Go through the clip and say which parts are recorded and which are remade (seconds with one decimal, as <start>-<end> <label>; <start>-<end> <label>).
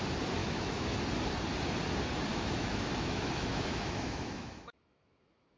0.0-0.4 recorded; 0.4-1.0 remade; 1.0-2.3 recorded; 2.3-5.6 remade